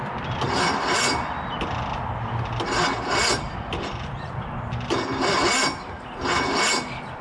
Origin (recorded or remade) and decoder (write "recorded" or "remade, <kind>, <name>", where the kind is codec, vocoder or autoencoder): recorded